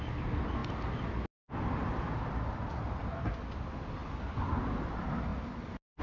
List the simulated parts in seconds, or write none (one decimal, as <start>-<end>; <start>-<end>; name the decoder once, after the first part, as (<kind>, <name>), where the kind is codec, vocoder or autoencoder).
none